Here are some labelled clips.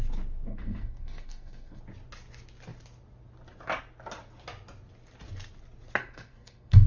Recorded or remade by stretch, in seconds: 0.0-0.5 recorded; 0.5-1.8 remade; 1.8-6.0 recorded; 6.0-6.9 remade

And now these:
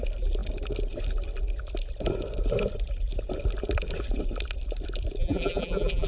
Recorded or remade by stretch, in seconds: 0.0-5.2 recorded; 5.2-6.1 remade